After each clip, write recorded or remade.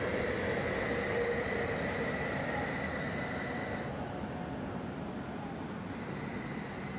recorded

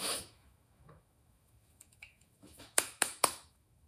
remade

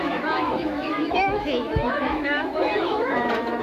remade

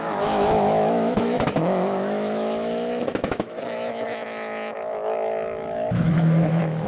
remade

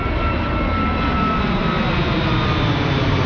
recorded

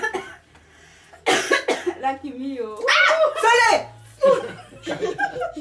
recorded